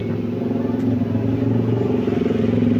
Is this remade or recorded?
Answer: recorded